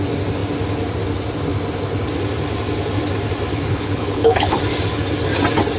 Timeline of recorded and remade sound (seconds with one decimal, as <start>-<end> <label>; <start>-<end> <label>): 0.0-3.5 recorded; 3.5-4.6 remade; 4.6-5.8 recorded

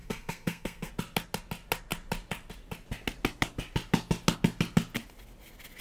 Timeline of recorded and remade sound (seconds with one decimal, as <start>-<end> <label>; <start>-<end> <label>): 0.0-0.9 remade; 0.9-5.8 recorded

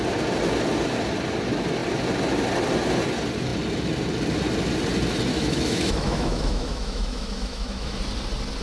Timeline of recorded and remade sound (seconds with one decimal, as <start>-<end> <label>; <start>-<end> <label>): 0.0-5.3 recorded; 5.3-8.0 remade; 8.0-8.6 recorded

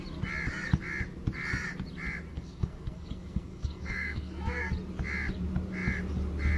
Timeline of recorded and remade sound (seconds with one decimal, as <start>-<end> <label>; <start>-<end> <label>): 0.0-2.3 recorded; 2.3-4.7 remade; 4.7-6.6 recorded

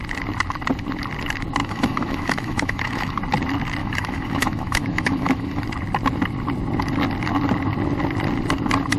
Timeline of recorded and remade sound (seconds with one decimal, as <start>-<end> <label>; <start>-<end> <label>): 0.0-1.6 recorded; 1.6-3.2 remade; 3.2-3.8 recorded; 3.8-5.6 remade; 5.6-9.0 recorded